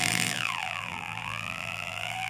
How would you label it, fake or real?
fake